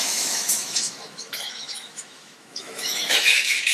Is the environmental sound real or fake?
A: fake